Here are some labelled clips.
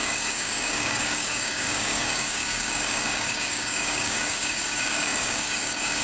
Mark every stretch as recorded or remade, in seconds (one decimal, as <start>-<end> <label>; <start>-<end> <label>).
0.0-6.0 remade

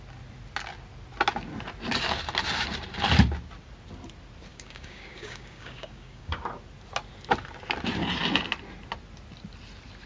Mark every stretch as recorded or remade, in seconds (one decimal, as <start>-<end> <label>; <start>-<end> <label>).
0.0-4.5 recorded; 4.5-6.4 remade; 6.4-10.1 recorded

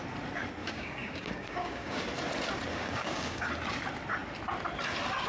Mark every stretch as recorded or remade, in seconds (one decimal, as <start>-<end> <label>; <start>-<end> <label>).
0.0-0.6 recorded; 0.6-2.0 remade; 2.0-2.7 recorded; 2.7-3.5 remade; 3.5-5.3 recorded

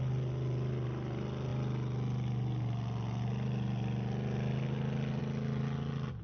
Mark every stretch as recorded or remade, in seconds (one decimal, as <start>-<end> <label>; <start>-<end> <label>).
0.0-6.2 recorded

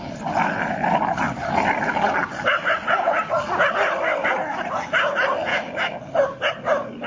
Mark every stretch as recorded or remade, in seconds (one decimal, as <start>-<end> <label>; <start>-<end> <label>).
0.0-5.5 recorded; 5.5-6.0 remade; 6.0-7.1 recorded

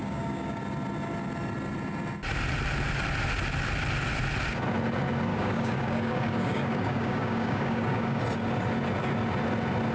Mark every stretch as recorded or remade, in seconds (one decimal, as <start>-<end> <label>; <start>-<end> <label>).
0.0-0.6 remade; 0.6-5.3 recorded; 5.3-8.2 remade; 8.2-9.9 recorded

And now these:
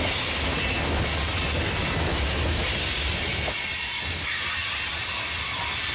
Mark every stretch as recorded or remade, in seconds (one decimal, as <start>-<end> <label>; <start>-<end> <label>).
0.0-5.9 recorded

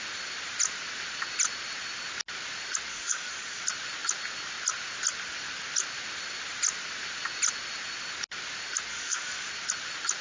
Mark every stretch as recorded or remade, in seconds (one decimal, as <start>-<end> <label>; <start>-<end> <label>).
0.0-2.9 recorded; 2.9-3.6 remade; 3.6-8.9 recorded; 8.9-9.5 remade; 9.5-10.2 recorded